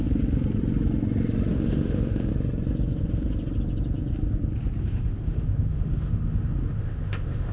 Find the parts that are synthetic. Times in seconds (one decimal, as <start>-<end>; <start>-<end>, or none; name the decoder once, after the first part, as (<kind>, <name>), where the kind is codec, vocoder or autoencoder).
1.5-2.3 (autoencoder, DAC-VAE); 4.8-7.5

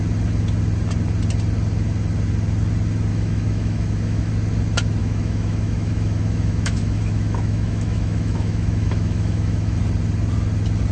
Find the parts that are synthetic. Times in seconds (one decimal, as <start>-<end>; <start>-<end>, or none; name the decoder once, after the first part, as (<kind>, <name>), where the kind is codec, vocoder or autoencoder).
3.1-4.3 (autoencoder, DAC-VAE); 5.0-9.8

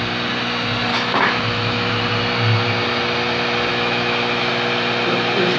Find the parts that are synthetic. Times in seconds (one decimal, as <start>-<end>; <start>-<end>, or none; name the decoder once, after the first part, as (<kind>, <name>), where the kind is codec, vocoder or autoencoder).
0.9-1.9 (autoencoder, DAC-VAE); 3.7-4.5

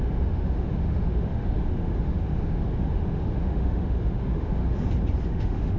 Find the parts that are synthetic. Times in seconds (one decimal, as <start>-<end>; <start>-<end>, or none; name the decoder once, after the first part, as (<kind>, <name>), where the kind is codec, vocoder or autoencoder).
0.0-4.6 (autoencoder, DAC-VAE); 5.3-5.8

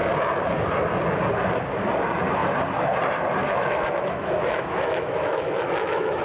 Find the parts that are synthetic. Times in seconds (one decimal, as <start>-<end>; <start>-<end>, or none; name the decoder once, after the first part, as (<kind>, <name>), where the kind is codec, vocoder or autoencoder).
3.4-6.2 (autoencoder, DAC-VAE)